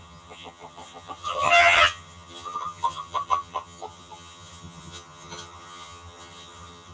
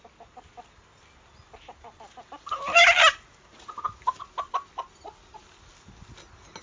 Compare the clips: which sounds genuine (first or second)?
second